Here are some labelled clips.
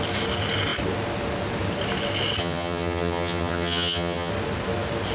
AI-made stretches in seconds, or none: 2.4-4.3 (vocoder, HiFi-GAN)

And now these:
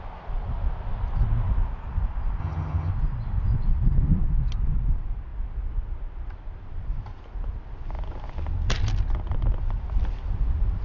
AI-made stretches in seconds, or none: 2.4-2.9 (vocoder, HiFi-GAN)

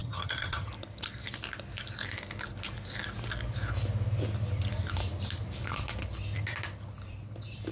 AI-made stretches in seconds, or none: 0.0-0.7 (vocoder, HiFi-GAN)

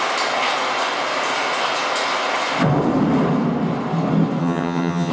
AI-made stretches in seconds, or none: 4.4-5.1 (vocoder, HiFi-GAN)